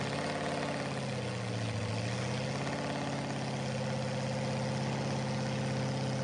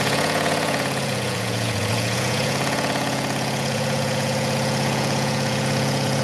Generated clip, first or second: second